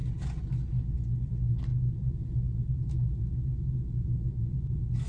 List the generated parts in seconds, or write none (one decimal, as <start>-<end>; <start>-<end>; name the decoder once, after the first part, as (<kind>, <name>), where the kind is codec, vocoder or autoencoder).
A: 0.0-1.0 (vocoder, BigVGAN v2); 1.7-5.1